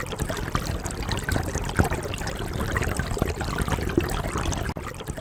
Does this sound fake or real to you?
real